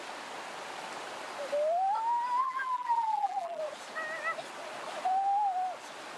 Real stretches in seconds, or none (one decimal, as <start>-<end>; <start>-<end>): 0.0-2.4; 3.6-6.2

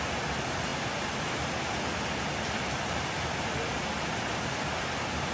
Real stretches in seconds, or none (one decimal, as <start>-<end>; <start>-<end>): 0.0-5.3

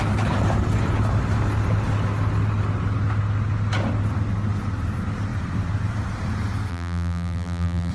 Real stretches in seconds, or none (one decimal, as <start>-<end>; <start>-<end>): 0.0-6.7

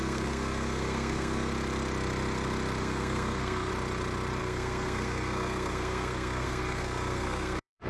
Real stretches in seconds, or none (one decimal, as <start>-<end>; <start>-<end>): 1.5-2.8; 3.7-4.4